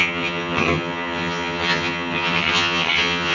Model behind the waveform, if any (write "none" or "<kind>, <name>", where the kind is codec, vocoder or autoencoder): vocoder, HiFi-GAN